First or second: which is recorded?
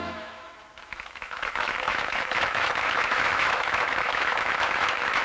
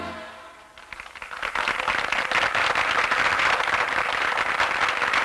second